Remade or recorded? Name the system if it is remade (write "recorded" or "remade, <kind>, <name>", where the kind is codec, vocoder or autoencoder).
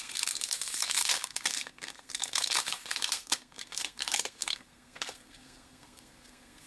remade, codec, SNAC